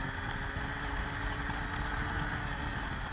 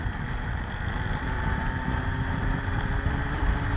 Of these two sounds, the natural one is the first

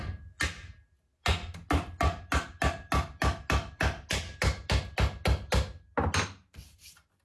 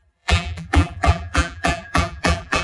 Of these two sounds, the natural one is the first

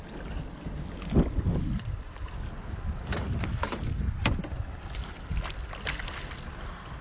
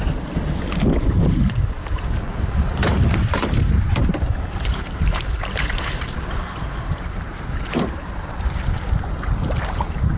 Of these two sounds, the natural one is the first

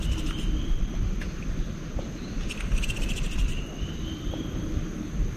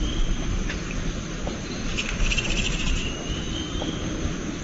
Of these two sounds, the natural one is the first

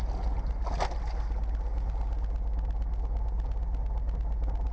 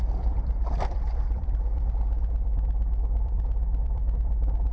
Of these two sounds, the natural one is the first